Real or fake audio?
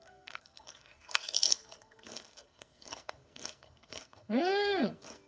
fake